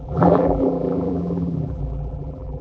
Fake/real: fake